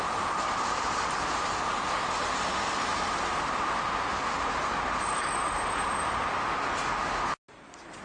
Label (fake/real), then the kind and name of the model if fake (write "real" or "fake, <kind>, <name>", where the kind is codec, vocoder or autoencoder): real